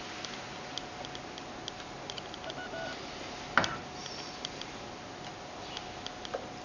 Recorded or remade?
recorded